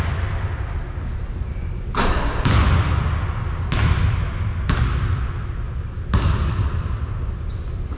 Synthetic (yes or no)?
no